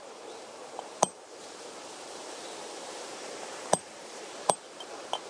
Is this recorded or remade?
remade